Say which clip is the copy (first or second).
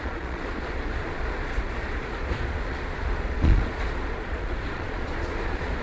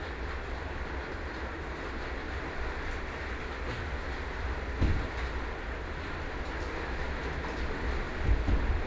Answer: first